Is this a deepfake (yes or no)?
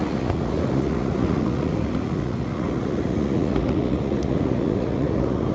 yes